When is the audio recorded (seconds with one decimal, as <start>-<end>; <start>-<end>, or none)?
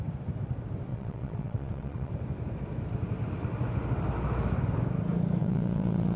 0.0-0.9; 2.1-5.4